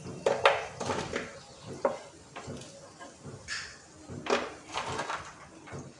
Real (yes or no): yes